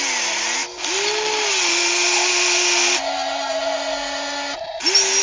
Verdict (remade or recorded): recorded